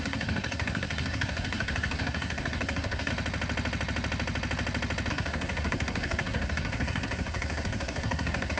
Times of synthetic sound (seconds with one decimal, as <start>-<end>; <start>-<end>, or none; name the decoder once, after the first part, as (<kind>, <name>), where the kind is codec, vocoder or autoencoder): 0.0-3.1 (codec, SNAC); 5.1-8.6

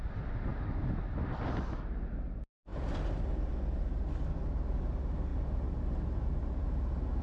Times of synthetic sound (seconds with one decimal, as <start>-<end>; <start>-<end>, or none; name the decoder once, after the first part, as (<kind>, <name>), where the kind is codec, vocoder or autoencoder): none

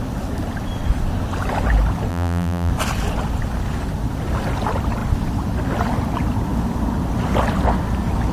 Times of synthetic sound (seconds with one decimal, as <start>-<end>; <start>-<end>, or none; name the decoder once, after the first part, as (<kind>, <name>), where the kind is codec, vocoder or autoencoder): 2.1-2.7 (vocoder, BigVGAN v2)

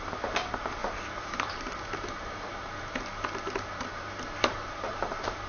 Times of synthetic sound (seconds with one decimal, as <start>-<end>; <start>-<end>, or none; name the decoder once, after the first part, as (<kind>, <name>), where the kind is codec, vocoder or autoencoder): 0.0-5.5 (vocoder, BigVGAN v2)

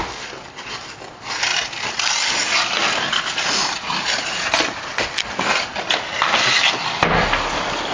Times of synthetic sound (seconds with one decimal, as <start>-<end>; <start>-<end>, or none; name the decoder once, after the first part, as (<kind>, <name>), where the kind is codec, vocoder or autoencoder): none